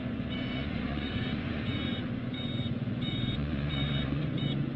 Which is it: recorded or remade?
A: remade